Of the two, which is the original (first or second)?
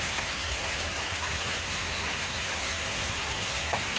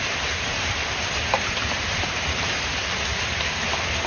second